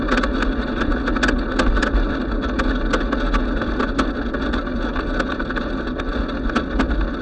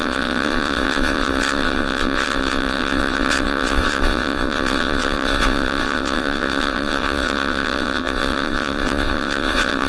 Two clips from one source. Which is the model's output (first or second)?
second